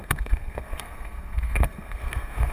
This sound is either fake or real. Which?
fake